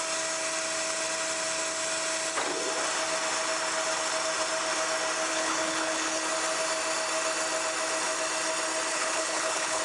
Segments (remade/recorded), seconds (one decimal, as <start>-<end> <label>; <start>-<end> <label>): 0.0-5.3 recorded; 5.3-6.2 remade; 6.2-8.9 recorded; 8.9-9.8 remade